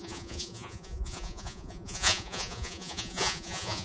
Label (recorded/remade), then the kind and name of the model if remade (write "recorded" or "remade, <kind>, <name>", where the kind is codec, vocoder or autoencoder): remade, vocoder, Vocos